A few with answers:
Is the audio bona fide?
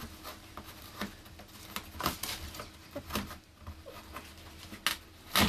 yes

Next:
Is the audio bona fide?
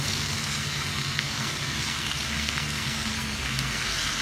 no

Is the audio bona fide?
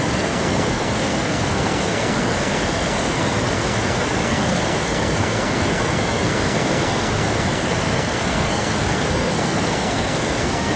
no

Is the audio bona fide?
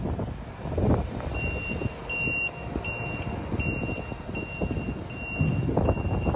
yes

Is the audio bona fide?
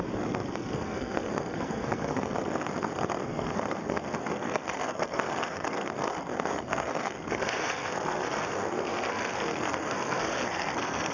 no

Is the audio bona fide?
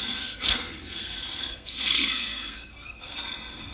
no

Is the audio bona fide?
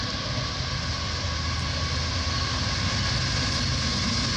yes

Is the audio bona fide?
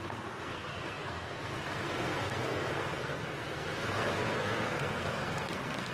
no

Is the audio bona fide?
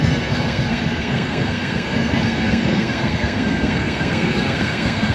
no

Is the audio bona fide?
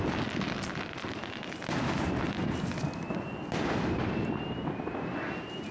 yes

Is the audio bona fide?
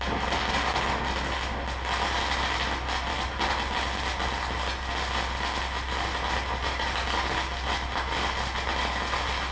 yes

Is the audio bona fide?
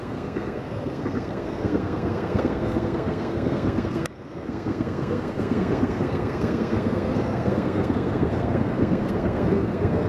no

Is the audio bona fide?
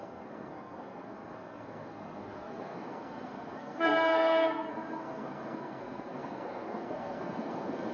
no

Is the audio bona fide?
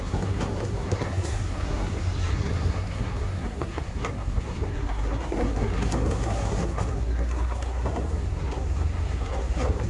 no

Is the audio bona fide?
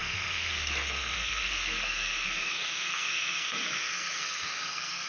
no